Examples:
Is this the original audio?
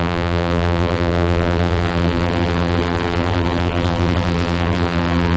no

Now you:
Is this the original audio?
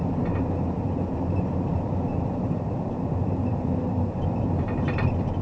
no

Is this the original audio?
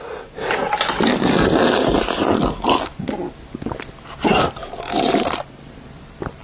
yes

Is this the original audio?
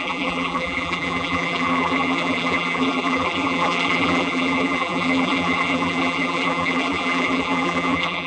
no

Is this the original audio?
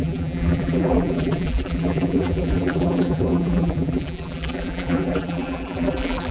no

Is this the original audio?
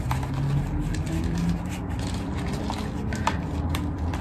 yes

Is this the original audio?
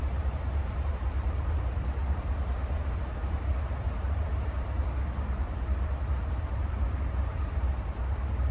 no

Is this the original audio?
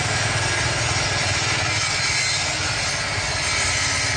yes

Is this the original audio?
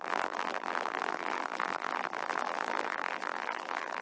no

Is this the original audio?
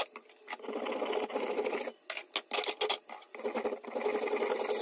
yes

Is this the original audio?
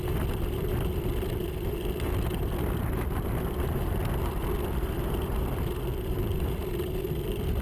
yes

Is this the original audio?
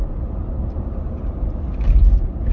no